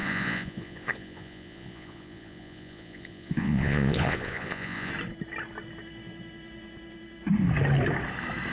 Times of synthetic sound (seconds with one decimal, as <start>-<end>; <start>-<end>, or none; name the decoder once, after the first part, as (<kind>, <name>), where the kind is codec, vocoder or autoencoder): 0.0-4.9 (vocoder, Vocos)